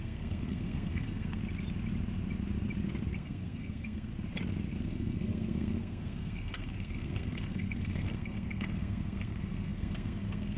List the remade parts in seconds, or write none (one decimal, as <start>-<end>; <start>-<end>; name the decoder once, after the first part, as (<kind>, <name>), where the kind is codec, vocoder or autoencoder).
0.0-1.4 (codec, SNAC); 3.1-4.1; 4.8-10.6

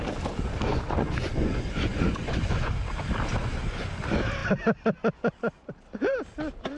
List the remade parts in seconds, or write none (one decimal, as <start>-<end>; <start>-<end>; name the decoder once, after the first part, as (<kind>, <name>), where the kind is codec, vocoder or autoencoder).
0.7-2.7 (vocoder, Vocos); 3.4-3.9